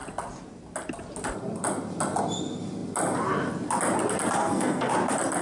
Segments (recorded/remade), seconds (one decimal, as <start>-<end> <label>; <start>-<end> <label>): 0.0-4.4 recorded; 4.4-4.9 remade; 4.9-5.4 recorded